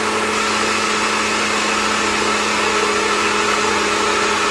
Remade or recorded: recorded